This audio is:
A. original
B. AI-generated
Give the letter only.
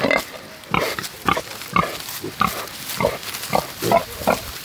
A